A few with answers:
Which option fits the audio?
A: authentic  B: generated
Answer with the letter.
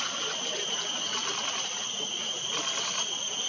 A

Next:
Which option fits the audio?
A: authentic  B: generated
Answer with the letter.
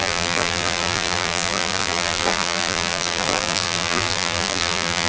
B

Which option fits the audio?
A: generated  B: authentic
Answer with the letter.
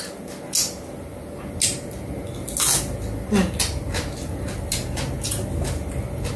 B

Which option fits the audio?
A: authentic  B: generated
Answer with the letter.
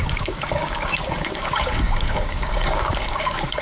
B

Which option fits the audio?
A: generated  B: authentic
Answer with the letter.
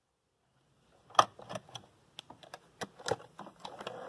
B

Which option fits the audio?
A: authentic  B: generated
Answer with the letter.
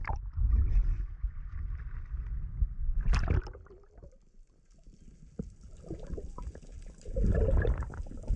A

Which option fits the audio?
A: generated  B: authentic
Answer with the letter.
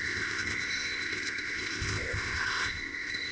A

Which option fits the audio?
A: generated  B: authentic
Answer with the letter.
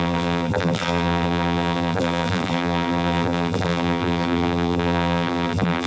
A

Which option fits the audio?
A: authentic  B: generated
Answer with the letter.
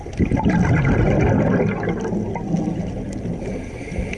A